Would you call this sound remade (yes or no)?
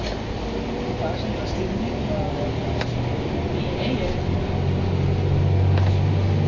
no